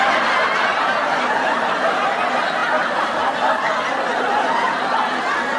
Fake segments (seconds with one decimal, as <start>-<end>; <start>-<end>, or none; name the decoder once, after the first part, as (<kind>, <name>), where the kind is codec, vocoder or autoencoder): 0.7-1.6 (vocoder, BigVGAN v2); 2.6-3.3